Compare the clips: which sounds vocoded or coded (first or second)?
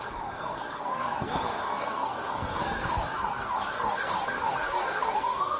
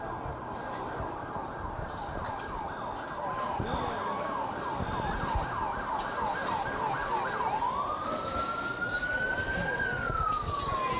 first